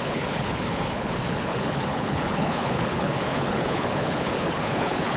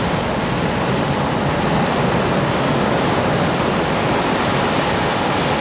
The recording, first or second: second